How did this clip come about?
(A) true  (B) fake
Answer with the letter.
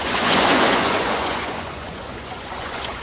B